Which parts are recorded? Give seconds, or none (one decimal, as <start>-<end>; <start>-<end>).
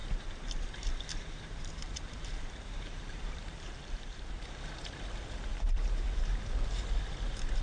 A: 4.6-5.5; 6.2-7.6